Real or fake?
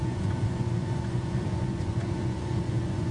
fake